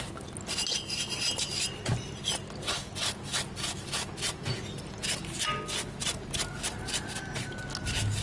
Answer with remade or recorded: recorded